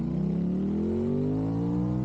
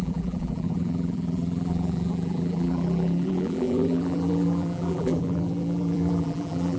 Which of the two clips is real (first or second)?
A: first